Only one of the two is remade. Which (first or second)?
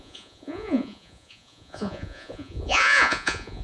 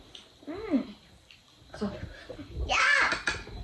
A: first